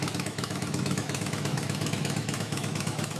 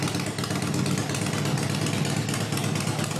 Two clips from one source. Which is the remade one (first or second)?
first